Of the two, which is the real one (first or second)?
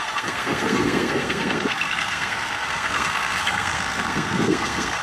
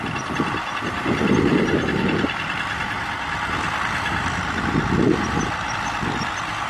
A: second